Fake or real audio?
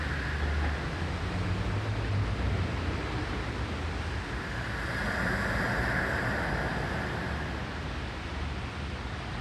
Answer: real